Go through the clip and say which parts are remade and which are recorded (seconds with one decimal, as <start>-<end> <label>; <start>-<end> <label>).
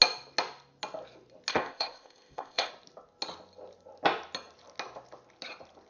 0.0-1.5 recorded; 1.5-2.7 remade; 2.7-5.9 recorded